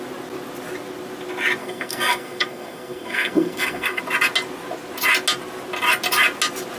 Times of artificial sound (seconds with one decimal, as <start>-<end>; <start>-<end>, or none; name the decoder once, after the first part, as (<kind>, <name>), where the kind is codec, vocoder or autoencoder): 1.6-4.0 (codec, SNAC)